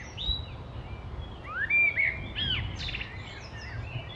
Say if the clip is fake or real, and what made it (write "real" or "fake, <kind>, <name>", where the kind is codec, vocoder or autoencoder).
real